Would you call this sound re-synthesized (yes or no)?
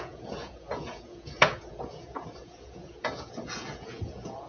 yes